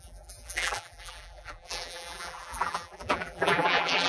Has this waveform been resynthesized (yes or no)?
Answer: yes